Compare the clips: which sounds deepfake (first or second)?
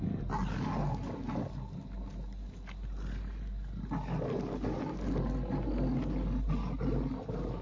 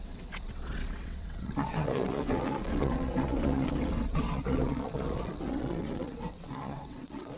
second